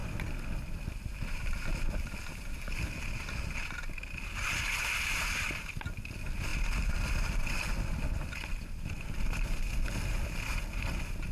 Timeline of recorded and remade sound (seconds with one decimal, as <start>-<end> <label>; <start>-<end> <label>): 0.0-11.3 recorded